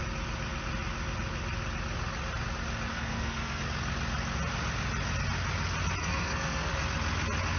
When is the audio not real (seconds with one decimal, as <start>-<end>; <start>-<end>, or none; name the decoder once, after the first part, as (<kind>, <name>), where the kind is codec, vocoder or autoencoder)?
2.9-3.6 (codec, SNAC); 6.0-6.7